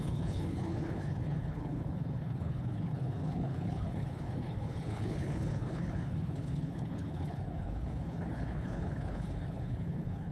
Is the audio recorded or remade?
remade